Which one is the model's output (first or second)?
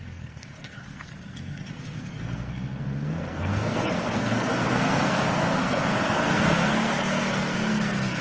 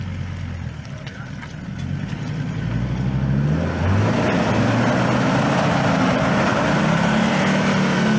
first